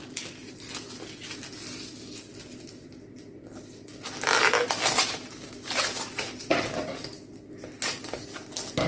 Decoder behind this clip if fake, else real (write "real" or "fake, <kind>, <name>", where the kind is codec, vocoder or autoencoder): real